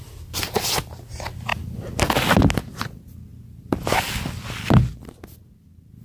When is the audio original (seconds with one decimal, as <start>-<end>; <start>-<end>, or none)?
0.0-1.5; 2.1-6.0